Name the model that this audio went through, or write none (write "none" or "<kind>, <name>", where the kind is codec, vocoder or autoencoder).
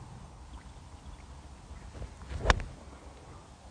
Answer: none